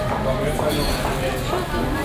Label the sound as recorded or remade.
recorded